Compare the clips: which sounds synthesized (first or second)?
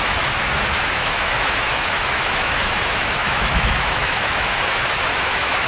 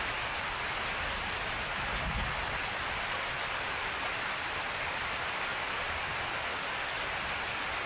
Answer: first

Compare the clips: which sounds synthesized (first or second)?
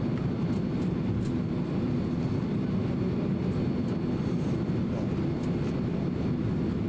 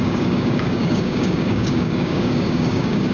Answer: second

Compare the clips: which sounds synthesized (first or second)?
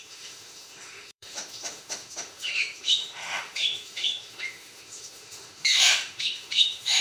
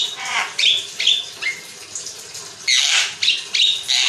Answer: first